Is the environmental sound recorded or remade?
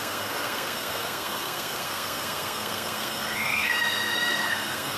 remade